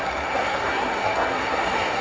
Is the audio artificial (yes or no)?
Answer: yes